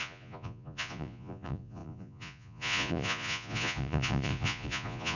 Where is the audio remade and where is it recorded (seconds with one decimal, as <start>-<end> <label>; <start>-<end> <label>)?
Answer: 0.0-5.2 remade